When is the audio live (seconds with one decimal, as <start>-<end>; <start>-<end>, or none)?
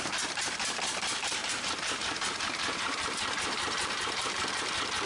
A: 0.0-1.4; 4.4-5.1